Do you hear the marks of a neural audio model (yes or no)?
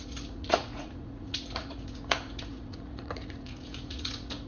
yes